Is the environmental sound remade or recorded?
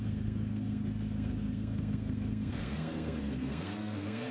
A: remade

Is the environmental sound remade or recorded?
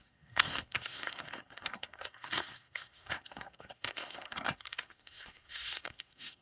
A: remade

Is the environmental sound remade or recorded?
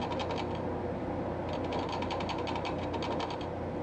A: recorded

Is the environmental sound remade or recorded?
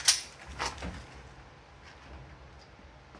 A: recorded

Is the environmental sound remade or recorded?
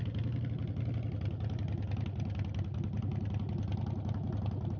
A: recorded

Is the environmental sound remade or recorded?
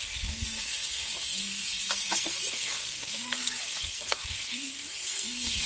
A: remade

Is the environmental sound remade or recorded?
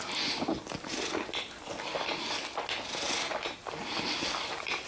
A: recorded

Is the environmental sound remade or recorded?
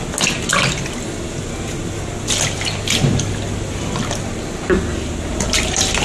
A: recorded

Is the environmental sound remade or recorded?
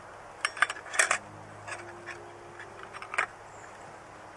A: recorded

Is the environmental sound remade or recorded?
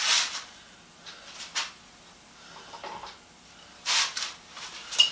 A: recorded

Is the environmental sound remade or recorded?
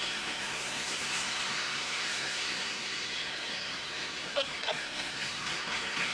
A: remade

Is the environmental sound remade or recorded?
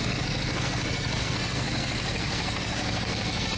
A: remade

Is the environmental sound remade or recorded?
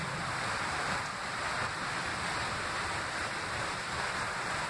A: recorded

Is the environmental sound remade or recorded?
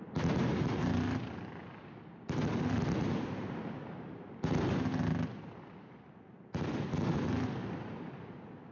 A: recorded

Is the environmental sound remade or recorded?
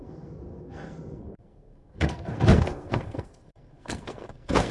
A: remade